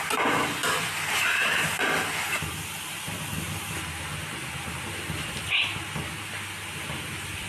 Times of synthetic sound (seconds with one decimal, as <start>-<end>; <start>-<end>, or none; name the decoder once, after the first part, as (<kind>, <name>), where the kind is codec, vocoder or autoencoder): 0.6-1.6 (vocoder, BigVGAN v2)